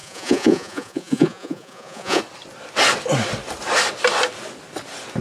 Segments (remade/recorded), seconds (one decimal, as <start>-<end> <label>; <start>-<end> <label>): 0.0-2.2 remade; 2.2-5.2 recorded